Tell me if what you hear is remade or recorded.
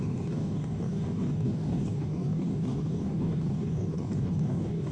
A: remade